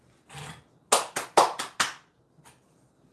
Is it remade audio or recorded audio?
recorded